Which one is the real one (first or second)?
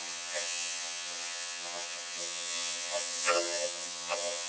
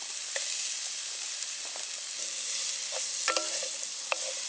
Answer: second